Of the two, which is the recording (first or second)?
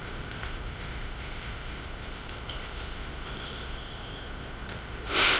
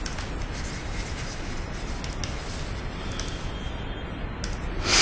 second